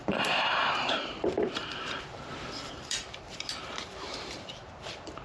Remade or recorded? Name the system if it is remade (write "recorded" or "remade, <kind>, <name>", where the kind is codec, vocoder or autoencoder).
remade, vocoder, BigVGAN v2